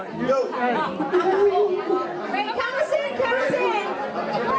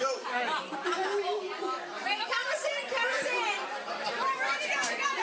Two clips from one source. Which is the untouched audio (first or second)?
first